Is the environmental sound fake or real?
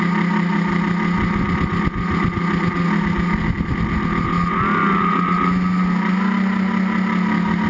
real